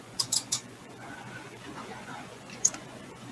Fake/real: fake